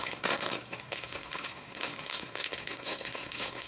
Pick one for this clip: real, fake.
fake